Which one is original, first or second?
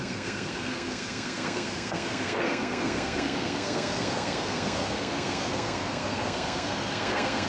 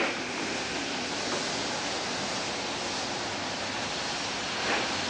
second